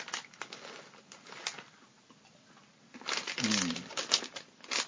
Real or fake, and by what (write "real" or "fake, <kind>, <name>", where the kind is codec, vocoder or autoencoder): real